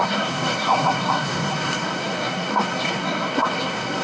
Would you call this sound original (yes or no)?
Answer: no